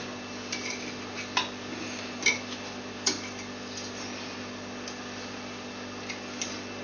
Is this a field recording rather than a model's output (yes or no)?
yes